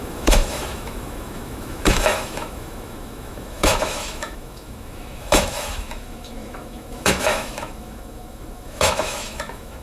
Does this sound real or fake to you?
fake